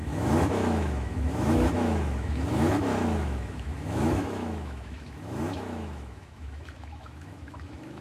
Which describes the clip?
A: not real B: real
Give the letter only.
A